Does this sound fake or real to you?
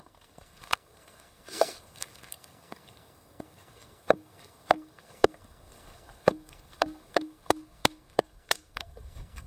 fake